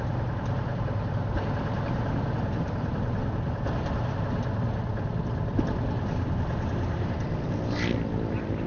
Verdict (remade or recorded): remade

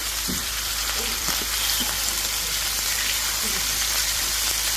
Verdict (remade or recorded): remade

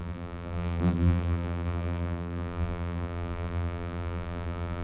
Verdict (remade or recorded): remade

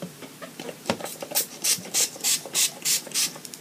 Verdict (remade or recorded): remade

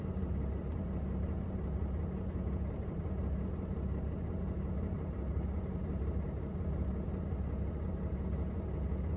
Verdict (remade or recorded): recorded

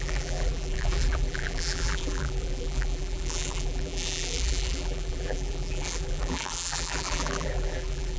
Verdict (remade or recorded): remade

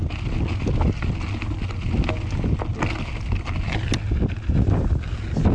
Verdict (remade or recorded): recorded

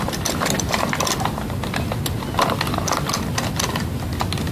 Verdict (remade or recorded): recorded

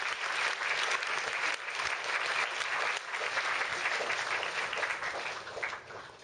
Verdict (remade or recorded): recorded